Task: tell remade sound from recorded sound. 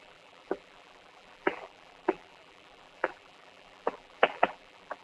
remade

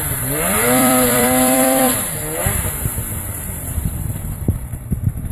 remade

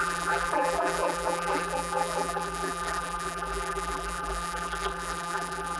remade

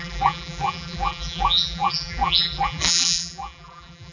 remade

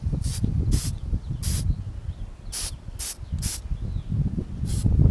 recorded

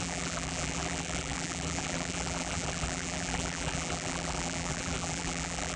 remade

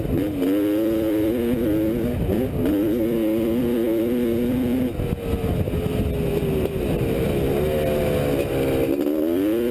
recorded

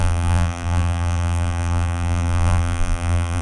remade